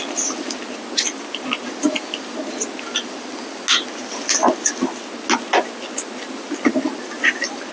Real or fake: real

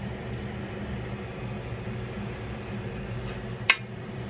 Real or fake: real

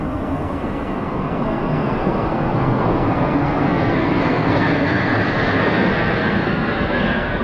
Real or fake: fake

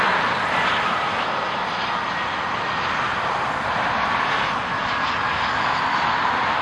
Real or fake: real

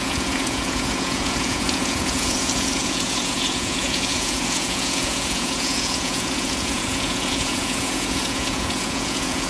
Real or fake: fake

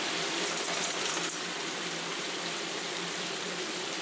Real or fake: fake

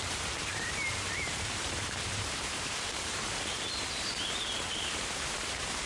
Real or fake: fake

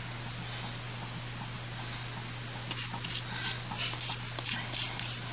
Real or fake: real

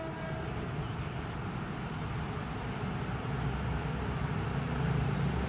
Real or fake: real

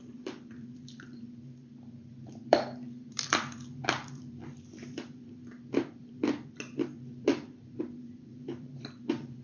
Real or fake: fake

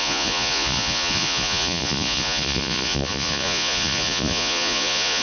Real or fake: fake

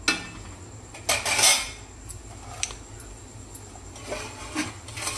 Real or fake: real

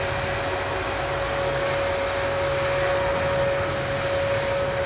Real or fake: real